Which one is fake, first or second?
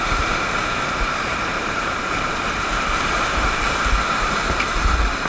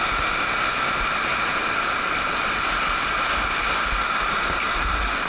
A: first